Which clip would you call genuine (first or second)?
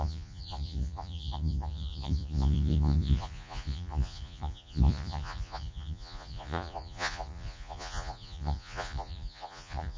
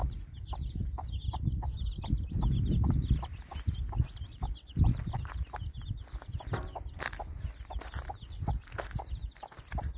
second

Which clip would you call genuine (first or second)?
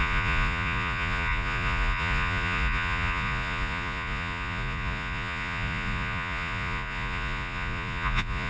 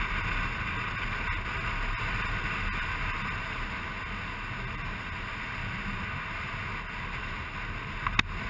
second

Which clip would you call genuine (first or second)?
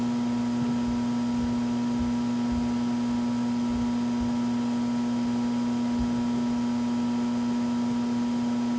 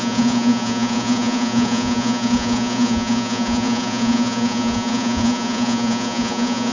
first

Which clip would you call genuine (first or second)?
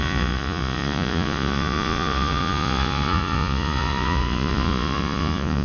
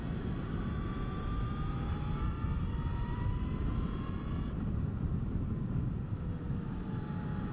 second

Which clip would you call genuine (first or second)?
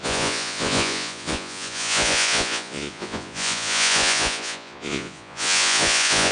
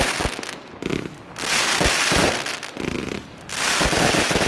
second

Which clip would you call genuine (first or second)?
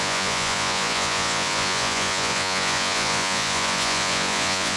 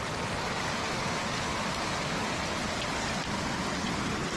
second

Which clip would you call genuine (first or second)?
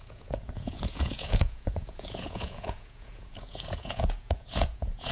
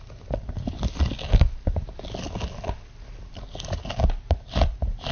second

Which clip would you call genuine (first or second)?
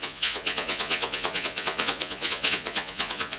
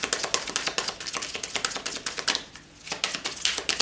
second